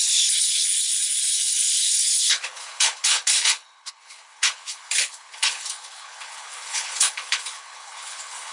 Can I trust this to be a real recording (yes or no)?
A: no